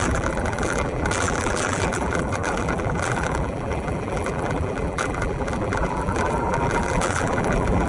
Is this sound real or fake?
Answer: fake